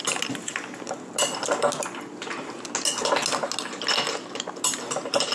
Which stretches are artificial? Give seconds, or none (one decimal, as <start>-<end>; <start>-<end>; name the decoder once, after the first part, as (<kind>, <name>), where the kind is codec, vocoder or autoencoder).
none